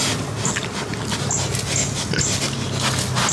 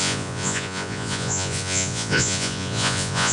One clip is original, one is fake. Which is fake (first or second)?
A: second